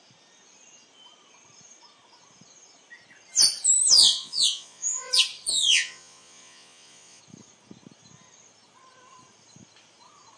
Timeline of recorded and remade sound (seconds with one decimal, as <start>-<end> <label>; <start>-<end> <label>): 0.0-4.0 recorded; 4.0-5.1 remade; 5.1-5.5 recorded; 5.5-7.2 remade; 7.2-10.4 recorded